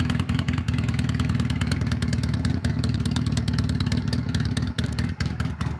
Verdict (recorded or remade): remade